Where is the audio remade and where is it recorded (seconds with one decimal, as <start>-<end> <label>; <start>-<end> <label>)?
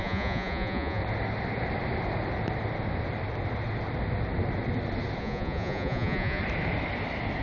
0.0-1.0 remade; 1.0-5.2 recorded; 5.2-6.4 remade; 6.4-7.4 recorded